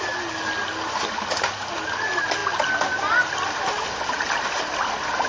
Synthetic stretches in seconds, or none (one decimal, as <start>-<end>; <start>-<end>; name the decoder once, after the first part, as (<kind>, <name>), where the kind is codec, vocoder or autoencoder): none